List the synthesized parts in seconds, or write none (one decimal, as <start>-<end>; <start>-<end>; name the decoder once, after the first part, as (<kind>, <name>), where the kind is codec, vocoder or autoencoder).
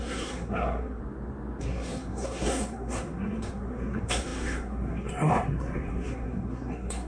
0.0-1.0 (codec, SNAC); 1.6-7.1